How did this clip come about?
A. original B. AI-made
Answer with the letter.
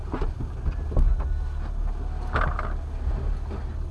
A